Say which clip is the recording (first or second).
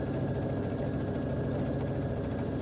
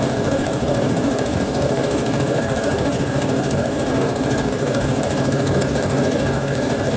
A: first